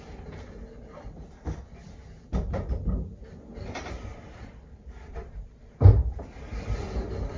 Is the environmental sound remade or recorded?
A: recorded